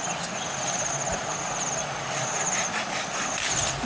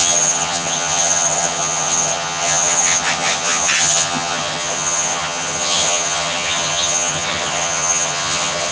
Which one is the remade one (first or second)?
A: second